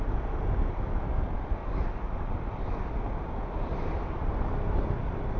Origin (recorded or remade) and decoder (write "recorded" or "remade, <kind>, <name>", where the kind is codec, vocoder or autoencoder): recorded